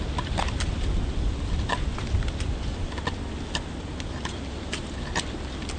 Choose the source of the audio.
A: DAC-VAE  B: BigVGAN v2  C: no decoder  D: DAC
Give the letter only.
C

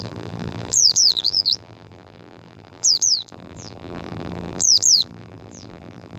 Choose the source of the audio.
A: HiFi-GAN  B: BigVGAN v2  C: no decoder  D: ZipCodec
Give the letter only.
B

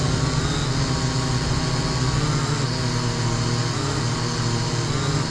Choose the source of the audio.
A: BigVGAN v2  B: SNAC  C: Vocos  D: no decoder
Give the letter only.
D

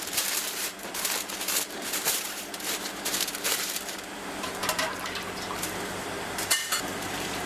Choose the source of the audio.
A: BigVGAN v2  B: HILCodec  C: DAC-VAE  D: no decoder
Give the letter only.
A